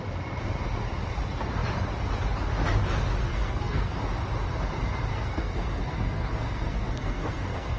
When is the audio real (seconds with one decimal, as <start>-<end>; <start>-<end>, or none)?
0.0-3.2; 4.0-5.1